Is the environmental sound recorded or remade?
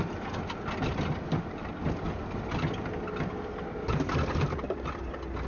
recorded